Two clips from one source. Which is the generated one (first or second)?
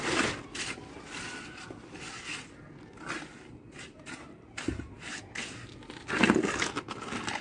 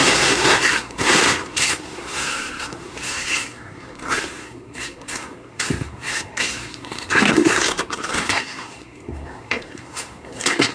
second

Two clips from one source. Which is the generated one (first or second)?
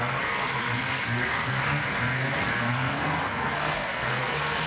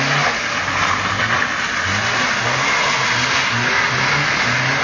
first